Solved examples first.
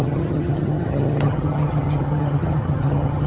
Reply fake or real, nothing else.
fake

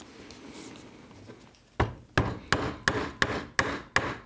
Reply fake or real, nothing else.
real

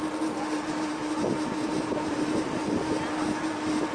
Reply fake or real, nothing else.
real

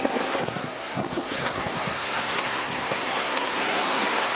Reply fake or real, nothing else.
fake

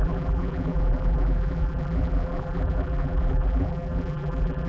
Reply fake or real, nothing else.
fake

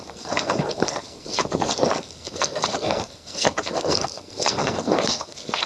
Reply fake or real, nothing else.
fake